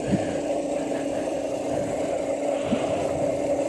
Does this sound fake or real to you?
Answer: real